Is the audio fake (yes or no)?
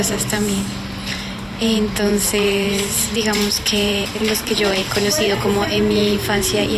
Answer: yes